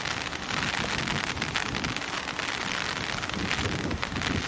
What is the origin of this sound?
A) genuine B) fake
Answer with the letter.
A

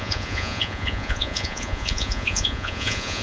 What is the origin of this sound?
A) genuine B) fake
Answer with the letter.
B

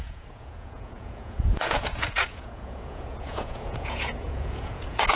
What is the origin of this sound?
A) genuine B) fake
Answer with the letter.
B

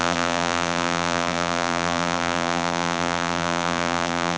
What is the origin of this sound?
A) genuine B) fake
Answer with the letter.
B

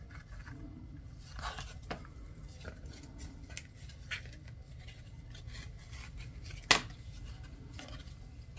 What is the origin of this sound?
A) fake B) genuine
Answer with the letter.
B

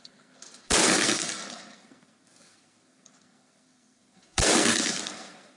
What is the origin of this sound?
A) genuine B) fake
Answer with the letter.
B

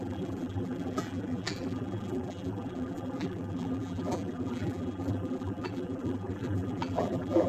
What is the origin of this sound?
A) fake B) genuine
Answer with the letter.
A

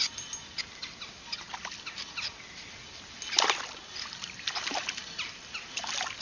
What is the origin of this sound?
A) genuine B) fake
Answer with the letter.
A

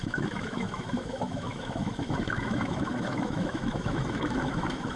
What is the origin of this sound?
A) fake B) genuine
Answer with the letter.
A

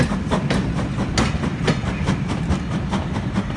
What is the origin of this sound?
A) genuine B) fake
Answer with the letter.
A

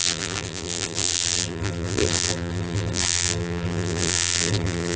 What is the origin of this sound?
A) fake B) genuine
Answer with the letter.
A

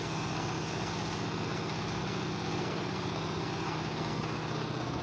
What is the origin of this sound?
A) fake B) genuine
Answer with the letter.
A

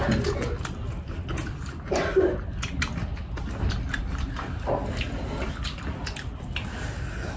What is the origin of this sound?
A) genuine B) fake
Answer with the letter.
A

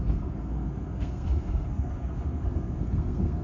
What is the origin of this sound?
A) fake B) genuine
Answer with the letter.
A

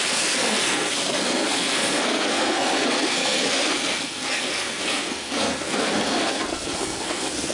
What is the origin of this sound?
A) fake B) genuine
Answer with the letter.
A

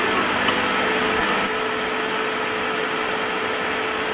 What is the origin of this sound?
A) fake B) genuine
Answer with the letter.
B